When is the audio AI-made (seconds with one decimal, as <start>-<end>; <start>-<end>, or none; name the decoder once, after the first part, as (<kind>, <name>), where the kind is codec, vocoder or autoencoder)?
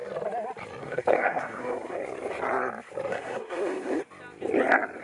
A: 0.8-2.0 (codec, SNAC); 3.1-4.0